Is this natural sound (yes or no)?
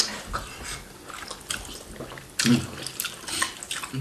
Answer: yes